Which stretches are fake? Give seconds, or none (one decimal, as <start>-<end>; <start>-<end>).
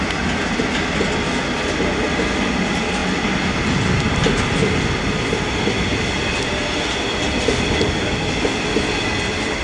none